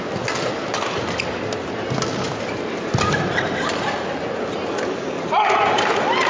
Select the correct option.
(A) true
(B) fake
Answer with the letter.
A